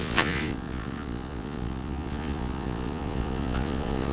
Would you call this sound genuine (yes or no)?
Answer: no